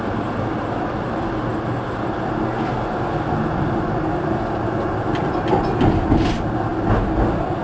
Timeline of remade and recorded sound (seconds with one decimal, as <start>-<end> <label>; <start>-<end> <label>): 0.0-7.6 recorded